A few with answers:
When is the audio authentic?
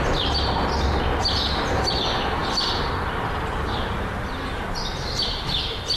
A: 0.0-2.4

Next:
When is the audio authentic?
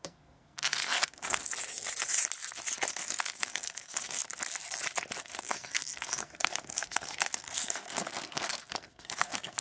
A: 1.5-2.9; 4.2-5.2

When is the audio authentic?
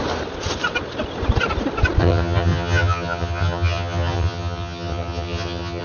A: 0.0-2.0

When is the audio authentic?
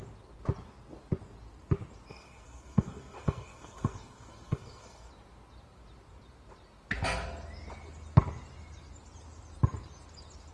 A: 0.0-2.1; 5.1-10.5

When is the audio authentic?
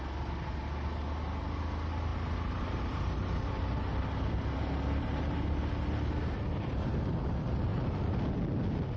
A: 0.0-9.0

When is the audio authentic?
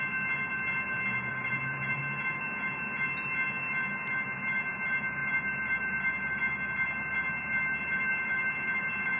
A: 0.0-1.3; 2.0-9.2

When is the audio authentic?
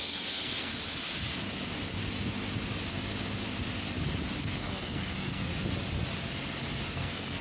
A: 0.7-4.4; 5.5-6.9